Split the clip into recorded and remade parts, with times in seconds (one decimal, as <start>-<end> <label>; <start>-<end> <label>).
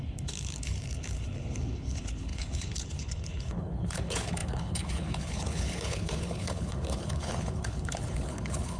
0.0-8.8 remade